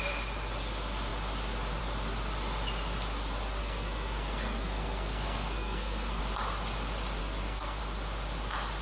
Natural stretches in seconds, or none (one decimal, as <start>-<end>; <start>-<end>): 0.0-3.6; 6.2-7.2; 7.8-8.8